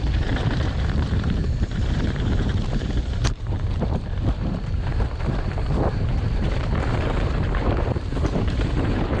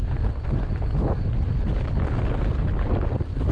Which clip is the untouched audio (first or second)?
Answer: second